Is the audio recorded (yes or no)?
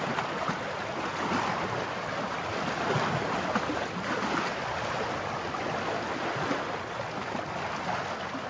yes